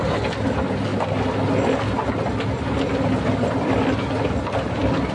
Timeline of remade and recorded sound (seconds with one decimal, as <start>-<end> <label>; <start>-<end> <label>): 0.0-5.1 recorded